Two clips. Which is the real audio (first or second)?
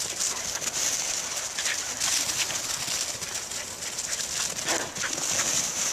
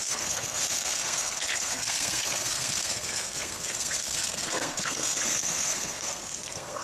first